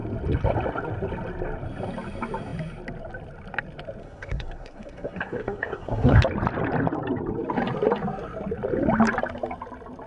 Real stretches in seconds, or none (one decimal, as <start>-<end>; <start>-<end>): 0.0-4.0; 6.2-10.1